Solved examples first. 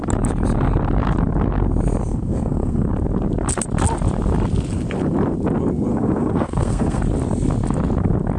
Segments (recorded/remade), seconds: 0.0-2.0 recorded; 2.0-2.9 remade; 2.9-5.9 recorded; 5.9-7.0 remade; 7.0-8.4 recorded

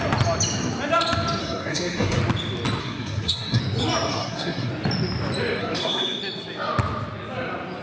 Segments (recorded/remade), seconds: 0.0-1.4 recorded; 1.4-2.2 remade; 2.2-2.8 recorded; 2.8-3.6 remade; 3.6-4.1 recorded; 4.1-4.7 remade; 4.7-5.6 recorded; 5.6-6.2 remade; 6.2-7.8 recorded

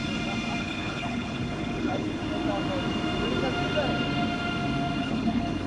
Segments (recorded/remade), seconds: 0.0-0.6 recorded; 0.6-2.2 remade; 2.2-5.0 recorded; 5.0-5.7 remade